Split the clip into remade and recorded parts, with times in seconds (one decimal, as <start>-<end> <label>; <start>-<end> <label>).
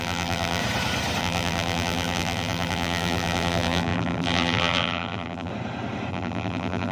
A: 0.0-0.6 remade; 0.6-1.2 recorded; 1.2-5.5 remade; 5.5-6.1 recorded; 6.1-6.9 remade